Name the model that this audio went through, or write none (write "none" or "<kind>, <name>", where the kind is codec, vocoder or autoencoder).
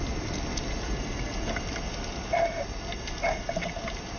none